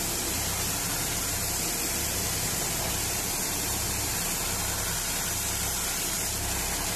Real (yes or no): no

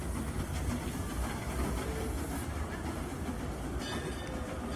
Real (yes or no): yes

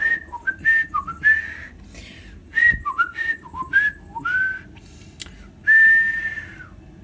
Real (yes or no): yes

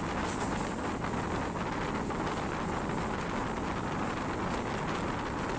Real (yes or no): yes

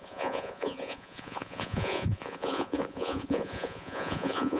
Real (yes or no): no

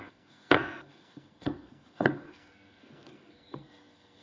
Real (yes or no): no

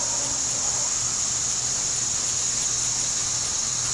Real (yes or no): yes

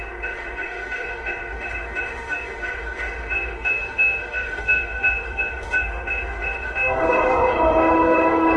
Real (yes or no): no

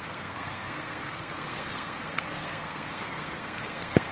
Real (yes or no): no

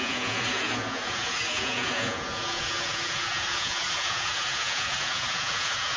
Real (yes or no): no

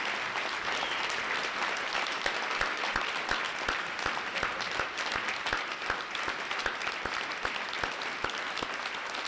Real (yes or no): yes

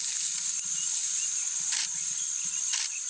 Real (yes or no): yes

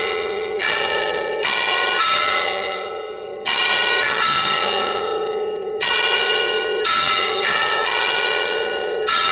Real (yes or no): no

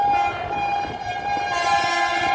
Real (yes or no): yes